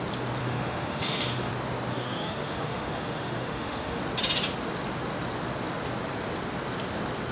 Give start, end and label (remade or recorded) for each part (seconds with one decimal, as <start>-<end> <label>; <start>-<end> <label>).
0.0-0.4 recorded; 0.4-1.5 remade; 1.5-1.9 recorded; 1.9-4.0 remade; 4.0-7.3 recorded